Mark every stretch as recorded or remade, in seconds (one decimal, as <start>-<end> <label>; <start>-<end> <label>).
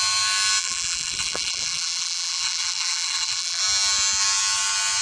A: 0.0-0.6 recorded; 0.6-3.6 remade; 3.6-5.0 recorded